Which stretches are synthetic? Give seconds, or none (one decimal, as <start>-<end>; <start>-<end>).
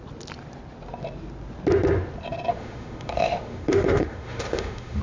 2.5-5.0